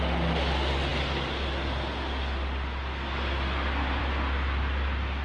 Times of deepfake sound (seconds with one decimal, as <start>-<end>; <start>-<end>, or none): none

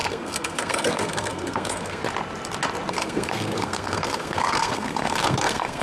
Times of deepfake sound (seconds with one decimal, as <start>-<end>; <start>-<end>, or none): 0.0-2.0; 2.9-5.8